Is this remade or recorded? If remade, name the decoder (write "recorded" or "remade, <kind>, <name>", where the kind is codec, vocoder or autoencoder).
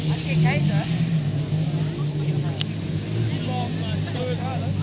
recorded